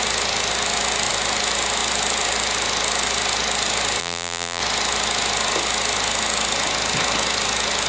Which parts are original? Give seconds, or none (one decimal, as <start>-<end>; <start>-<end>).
0.0-4.0; 4.6-7.9